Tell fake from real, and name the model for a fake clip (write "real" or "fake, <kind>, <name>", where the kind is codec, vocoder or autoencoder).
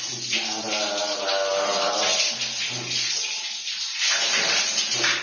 real